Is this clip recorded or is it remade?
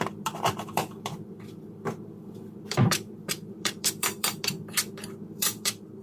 remade